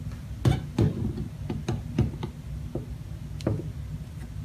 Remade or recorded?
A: recorded